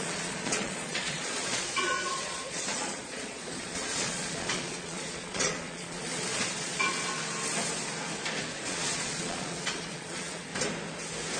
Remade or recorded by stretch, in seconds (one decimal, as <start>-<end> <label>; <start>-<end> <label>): 0.0-7.1 remade; 7.1-8.7 recorded; 8.7-10.5 remade; 10.5-11.4 recorded